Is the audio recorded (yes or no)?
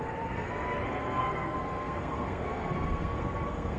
no